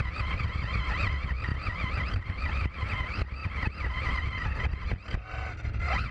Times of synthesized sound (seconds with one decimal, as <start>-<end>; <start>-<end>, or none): 1.5-2.4; 3.4-4.6